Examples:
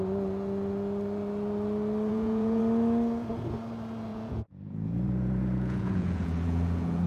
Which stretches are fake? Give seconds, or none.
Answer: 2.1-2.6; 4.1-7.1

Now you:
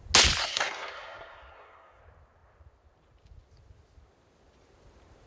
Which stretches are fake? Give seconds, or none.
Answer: 0.4-2.0

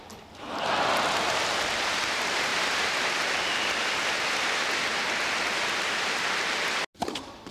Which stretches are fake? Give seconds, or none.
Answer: none

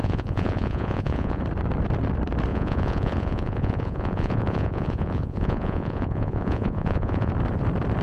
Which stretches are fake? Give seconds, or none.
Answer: 0.0-1.4; 2.5-7.3